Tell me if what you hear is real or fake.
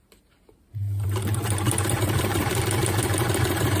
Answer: fake